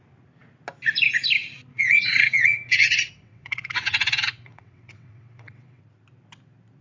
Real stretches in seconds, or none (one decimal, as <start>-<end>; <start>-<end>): 0.0-1.7; 5.8-6.8